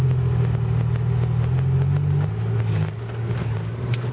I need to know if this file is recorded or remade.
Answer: recorded